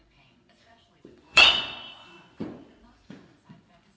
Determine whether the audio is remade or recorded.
remade